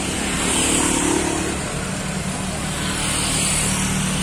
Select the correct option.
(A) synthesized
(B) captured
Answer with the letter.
B